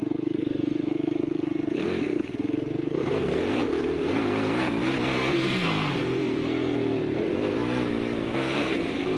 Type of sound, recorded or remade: remade